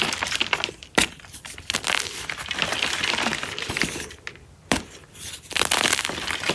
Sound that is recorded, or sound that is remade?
remade